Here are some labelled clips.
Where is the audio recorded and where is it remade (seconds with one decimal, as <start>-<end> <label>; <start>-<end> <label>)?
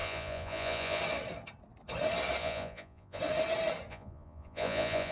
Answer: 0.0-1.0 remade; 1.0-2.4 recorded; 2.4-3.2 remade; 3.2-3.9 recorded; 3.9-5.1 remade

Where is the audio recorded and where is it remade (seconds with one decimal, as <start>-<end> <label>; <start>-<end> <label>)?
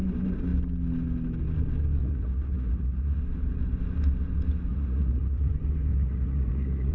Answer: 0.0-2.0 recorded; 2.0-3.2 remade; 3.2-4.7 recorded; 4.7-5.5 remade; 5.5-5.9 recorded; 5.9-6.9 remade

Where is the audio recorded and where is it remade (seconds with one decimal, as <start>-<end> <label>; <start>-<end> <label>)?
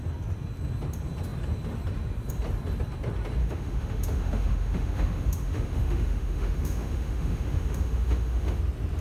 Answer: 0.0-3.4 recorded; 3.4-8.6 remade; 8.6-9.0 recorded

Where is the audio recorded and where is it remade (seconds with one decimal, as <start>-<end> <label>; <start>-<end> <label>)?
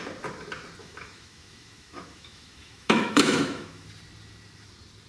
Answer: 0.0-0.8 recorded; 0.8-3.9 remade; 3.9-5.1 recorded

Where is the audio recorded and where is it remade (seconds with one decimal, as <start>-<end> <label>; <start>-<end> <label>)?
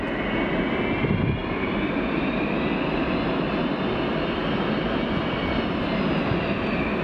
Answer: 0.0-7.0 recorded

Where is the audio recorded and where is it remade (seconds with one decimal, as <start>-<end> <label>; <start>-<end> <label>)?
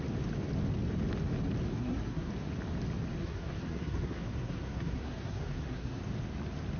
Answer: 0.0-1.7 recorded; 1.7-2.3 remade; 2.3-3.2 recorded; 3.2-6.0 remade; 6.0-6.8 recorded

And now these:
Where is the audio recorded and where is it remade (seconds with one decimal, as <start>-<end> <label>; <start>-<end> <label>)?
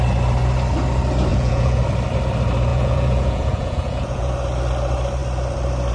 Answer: 0.0-1.3 recorded; 1.3-1.8 remade; 1.8-2.7 recorded; 2.7-4.3 remade; 4.3-5.9 recorded